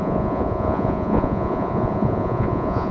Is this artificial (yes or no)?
yes